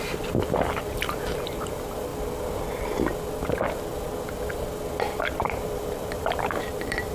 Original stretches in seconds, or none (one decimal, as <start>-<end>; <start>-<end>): 2.1-5.2